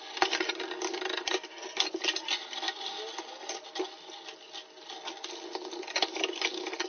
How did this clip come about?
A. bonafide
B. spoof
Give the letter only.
A